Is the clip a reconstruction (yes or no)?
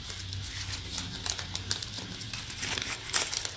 no